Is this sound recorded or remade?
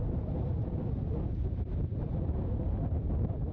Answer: recorded